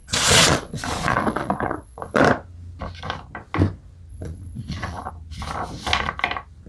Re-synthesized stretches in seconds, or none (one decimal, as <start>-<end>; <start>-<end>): 0.0-2.2; 4.1-5.1

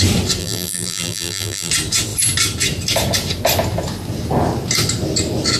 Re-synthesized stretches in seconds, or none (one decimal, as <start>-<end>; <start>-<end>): 0.4-1.7

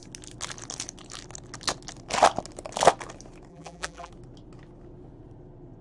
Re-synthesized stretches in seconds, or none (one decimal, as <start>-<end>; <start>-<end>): 3.5-4.1